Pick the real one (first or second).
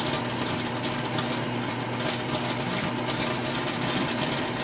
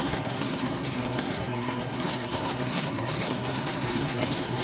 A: first